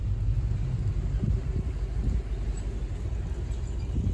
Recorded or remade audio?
recorded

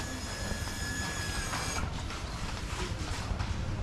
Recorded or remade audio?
remade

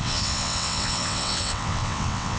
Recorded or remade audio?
remade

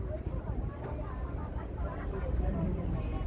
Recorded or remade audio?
recorded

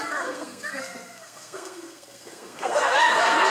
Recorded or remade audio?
remade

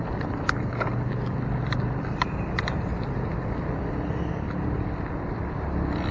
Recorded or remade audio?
recorded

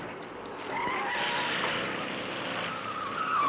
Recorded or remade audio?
recorded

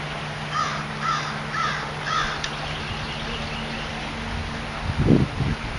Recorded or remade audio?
recorded